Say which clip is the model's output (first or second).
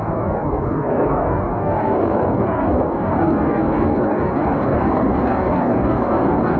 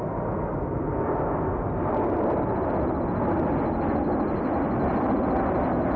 first